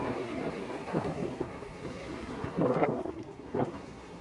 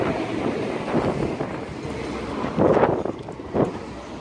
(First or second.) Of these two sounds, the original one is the second